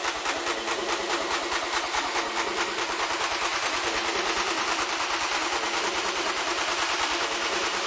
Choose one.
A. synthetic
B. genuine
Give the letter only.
B